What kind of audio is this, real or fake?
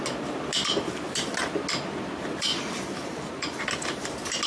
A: real